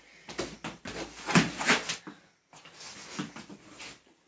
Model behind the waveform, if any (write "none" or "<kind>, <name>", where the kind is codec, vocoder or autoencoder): none